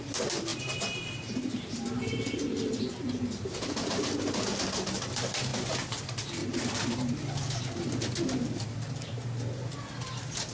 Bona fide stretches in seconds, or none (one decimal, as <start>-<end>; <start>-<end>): 0.0-10.5